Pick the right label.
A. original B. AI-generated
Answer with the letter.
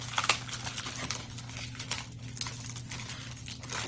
A